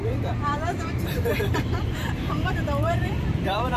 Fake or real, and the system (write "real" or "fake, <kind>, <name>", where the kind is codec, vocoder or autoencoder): fake, vocoder, BigVGAN v2